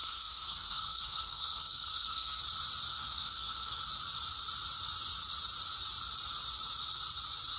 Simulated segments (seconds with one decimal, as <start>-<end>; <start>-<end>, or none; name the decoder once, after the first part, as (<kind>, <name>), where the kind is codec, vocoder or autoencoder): 0.0-2.4 (codec, SNAC); 2.9-3.8